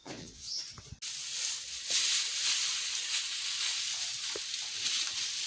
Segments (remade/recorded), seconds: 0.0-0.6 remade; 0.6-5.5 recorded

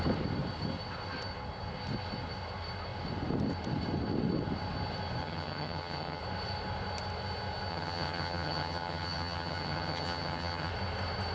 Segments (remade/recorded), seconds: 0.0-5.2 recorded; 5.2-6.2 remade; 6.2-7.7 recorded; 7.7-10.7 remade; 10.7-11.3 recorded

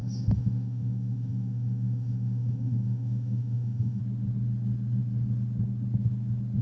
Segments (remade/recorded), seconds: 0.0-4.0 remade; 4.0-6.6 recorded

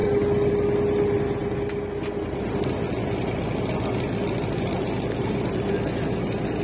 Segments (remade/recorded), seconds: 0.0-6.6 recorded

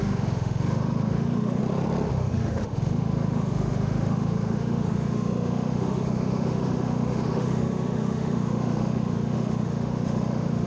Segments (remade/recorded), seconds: 0.0-1.6 remade; 1.6-2.1 recorded; 2.1-10.7 remade

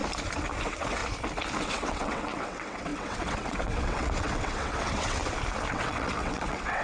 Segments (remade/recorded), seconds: 0.0-0.6 recorded; 0.6-1.0 remade; 1.0-1.6 recorded; 1.6-5.2 remade; 5.2-5.7 recorded; 5.7-6.8 remade

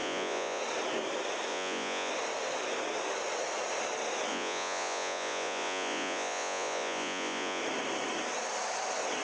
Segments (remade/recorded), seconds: 0.0-0.6 remade; 0.6-1.5 recorded; 1.5-2.1 remade; 2.1-4.3 recorded; 4.3-7.6 remade; 7.6-9.2 recorded

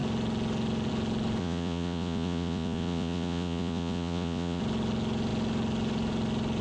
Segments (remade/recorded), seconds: 0.0-1.4 recorded; 1.4-4.6 remade; 4.6-6.6 recorded